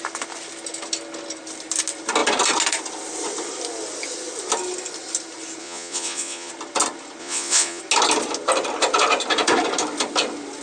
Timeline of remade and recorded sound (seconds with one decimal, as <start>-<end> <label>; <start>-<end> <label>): 0.0-5.6 recorded; 5.6-6.5 remade; 6.5-7.2 recorded; 7.2-7.8 remade; 7.8-10.6 recorded